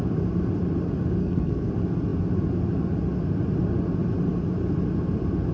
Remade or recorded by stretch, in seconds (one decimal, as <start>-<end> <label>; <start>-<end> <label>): 0.0-1.2 recorded; 1.2-1.7 remade; 1.7-5.5 recorded